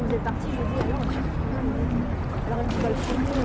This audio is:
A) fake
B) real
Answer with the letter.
B